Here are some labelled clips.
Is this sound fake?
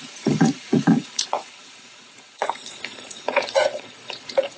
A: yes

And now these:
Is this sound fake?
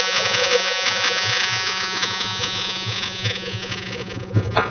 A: yes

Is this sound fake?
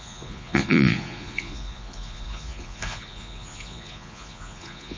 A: yes